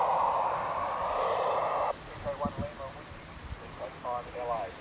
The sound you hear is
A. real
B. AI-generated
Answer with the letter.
A